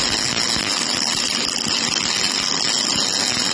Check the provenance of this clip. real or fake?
real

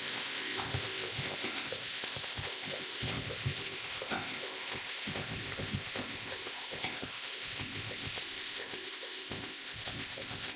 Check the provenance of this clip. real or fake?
fake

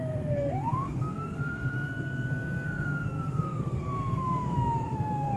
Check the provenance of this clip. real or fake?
fake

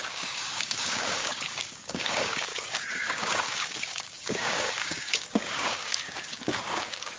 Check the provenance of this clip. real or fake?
fake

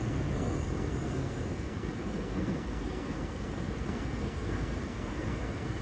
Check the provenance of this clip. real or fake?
fake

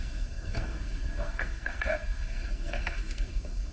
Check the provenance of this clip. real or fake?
fake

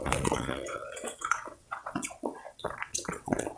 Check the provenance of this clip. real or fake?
fake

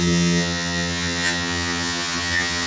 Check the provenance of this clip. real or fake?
fake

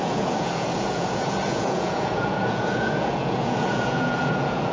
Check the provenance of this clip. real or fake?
fake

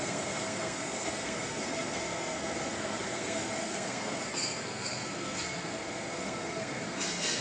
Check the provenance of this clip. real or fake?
fake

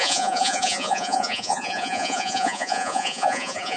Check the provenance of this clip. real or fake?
fake